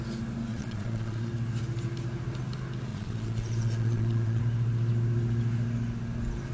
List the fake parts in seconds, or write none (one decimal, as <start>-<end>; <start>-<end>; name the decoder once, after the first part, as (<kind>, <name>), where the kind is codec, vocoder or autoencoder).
0.5-1.3 (vocoder, Vocos); 2.9-4.4